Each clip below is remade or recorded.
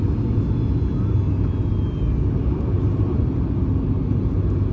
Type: recorded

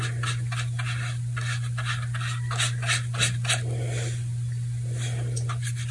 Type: recorded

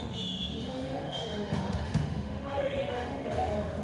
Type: remade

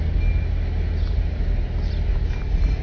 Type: recorded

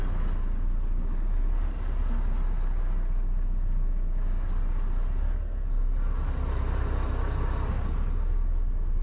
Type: recorded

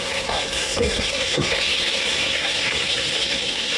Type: remade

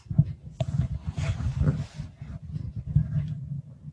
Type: recorded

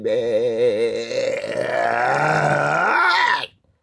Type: recorded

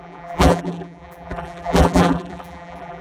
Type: remade